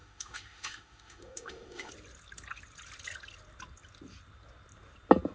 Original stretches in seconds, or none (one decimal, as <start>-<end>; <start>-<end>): 1.9-5.3